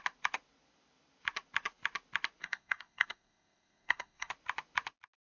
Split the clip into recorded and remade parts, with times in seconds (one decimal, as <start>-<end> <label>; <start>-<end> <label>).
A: 0.0-2.4 recorded; 2.4-4.3 remade; 4.3-5.3 recorded